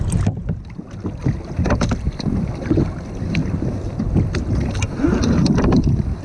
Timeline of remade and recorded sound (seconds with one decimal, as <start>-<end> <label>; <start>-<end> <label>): 0.0-6.2 recorded